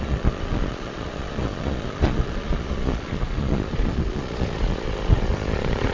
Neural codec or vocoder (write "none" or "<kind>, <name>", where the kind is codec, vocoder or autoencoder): vocoder, Vocos